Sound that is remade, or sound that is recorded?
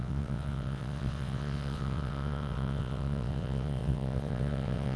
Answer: remade